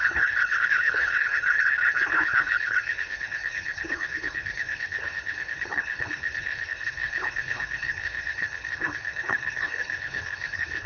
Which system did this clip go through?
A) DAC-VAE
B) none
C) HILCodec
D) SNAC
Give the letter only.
C